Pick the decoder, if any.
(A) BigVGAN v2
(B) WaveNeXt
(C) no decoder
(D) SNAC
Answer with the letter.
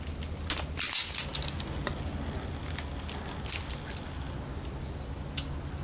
C